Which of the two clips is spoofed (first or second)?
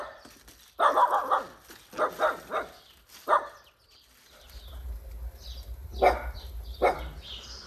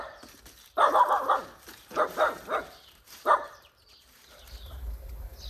second